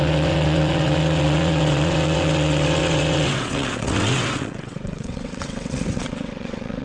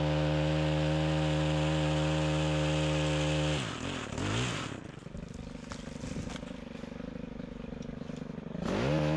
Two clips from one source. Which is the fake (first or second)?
first